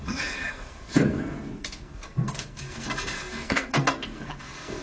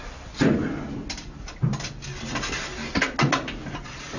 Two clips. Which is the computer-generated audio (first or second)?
first